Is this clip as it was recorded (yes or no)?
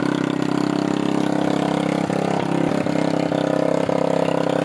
yes